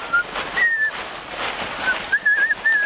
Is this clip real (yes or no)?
yes